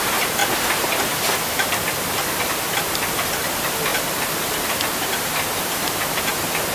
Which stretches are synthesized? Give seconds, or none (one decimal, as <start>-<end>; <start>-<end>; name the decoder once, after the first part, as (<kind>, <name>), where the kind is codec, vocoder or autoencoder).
0.0-0.4 (vocoder, BigVGAN v2); 2.9-6.7